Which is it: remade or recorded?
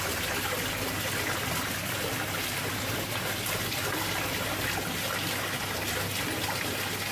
recorded